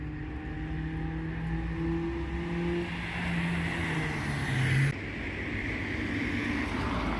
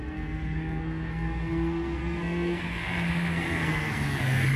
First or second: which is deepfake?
second